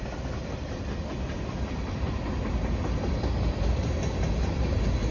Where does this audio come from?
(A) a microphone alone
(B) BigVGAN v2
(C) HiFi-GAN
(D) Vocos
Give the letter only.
A